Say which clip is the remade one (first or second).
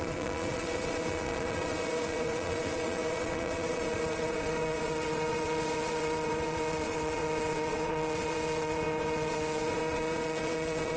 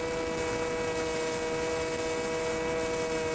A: first